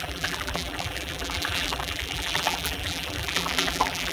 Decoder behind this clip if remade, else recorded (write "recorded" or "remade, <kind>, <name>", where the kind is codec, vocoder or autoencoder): remade, vocoder, BigVGAN v2